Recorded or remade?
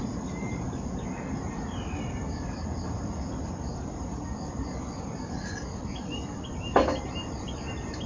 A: recorded